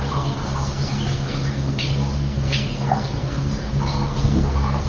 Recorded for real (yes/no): no